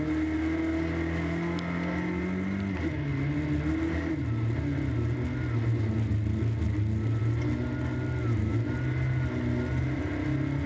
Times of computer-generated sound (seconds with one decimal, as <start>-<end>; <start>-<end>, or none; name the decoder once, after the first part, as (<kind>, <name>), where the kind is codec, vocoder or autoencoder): none